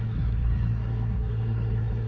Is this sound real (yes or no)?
no